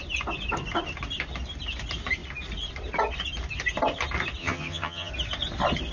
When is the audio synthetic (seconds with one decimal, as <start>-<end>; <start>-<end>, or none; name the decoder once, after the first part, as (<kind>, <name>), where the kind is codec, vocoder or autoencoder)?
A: 4.4-5.1 (vocoder, HiFi-GAN)